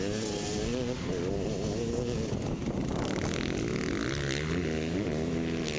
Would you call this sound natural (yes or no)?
yes